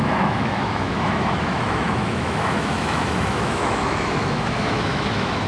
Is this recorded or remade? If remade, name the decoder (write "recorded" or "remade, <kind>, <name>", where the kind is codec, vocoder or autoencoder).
remade, autoencoder, DAC-VAE